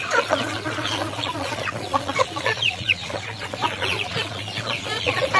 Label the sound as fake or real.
fake